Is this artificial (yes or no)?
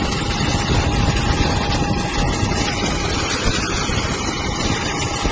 no